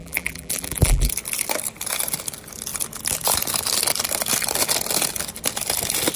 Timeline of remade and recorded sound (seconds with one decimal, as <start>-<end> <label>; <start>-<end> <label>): 0.0-1.1 remade; 1.1-6.2 recorded

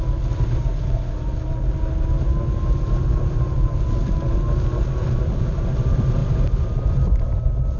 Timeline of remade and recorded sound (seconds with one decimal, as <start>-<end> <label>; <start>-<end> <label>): 0.0-6.2 recorded; 6.2-6.7 remade; 6.7-7.8 recorded

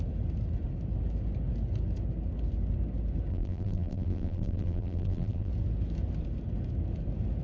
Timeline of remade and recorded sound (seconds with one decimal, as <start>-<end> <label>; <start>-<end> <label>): 0.0-3.3 recorded; 3.3-5.5 remade; 5.5-7.4 recorded

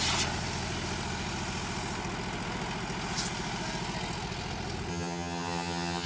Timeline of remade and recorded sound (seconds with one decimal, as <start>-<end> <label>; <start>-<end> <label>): 0.0-4.9 recorded; 4.9-6.1 remade